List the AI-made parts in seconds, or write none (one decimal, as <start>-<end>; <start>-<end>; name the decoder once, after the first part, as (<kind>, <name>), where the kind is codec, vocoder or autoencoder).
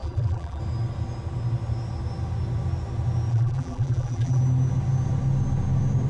0.0-0.6 (vocoder, BigVGAN v2); 3.3-4.4